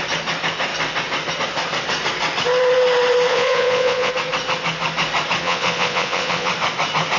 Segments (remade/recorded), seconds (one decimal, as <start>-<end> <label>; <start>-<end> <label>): 0.0-3.3 recorded; 3.3-4.1 remade; 4.1-5.4 recorded; 5.4-6.5 remade; 6.5-7.2 recorded